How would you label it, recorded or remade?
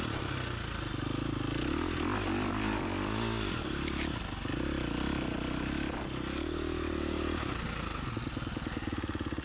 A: recorded